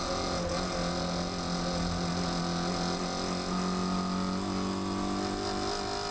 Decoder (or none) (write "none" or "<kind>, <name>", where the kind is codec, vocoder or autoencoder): none